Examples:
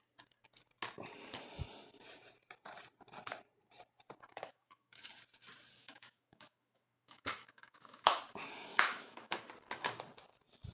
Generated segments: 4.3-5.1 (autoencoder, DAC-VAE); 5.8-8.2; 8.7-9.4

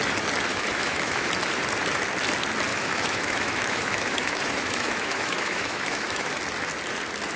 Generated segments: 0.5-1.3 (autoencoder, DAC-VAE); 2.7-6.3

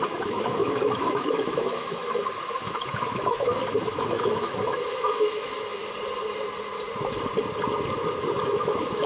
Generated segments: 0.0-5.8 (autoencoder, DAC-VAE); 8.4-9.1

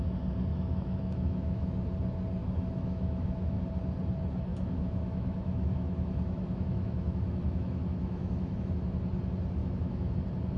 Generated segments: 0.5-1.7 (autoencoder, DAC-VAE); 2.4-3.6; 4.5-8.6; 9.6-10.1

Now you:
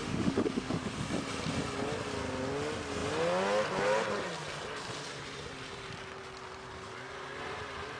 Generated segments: 0.0-0.9 (autoencoder, DAC-VAE)